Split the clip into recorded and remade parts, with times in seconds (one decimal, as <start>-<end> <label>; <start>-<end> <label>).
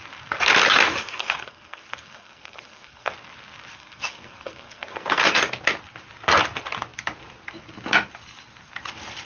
0.0-1.0 recorded; 1.0-3.1 remade; 3.1-3.7 recorded; 3.7-5.4 remade; 5.4-9.3 recorded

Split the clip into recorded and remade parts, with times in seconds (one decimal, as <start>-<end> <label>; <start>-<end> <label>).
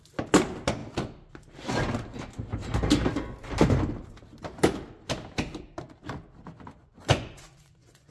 0.0-6.8 recorded; 6.8-8.1 remade